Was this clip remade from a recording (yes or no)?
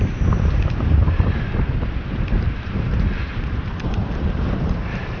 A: yes